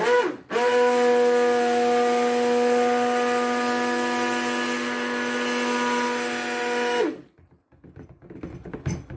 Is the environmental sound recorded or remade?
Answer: recorded